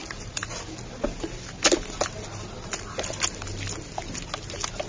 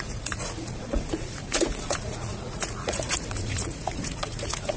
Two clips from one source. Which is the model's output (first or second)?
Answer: second